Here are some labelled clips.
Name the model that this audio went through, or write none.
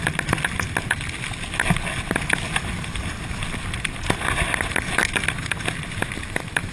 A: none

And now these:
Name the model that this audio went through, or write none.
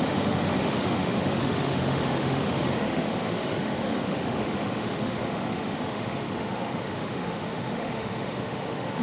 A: autoencoder, DAC-VAE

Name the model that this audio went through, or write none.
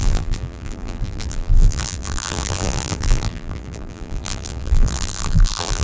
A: vocoder, BigVGAN v2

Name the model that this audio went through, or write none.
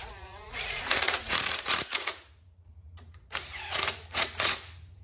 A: vocoder, Vocos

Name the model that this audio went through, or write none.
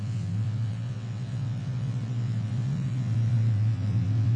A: vocoder, WaveNeXt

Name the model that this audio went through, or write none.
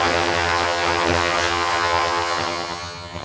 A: vocoder, HiFi-GAN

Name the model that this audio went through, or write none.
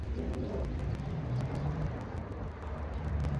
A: none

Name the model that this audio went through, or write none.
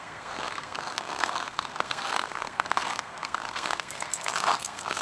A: codec, SNAC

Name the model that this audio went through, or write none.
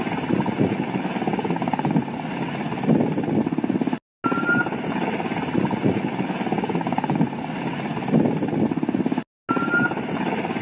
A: none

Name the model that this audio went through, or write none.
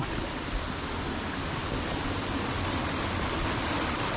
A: none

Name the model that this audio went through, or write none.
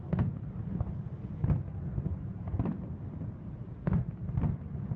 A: none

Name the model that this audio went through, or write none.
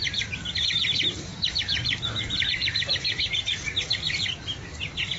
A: none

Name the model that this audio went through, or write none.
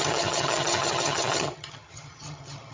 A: vocoder, HiFi-GAN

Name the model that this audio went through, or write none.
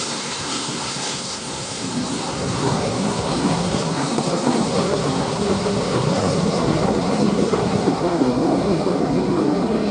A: codec, SNAC